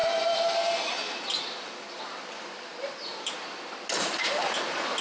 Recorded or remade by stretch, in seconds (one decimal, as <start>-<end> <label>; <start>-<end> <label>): 0.0-5.0 recorded